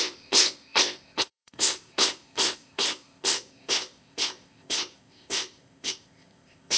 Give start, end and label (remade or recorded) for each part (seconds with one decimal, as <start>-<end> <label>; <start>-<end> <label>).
0.0-6.8 remade